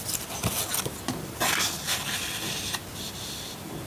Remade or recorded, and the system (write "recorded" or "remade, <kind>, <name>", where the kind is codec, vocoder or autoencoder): recorded